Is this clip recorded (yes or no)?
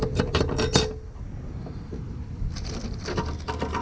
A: yes